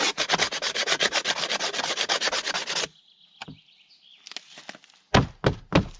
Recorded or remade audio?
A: recorded